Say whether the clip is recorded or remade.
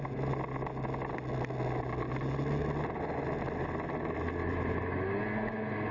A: recorded